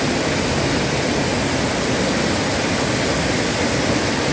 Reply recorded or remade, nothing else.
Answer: recorded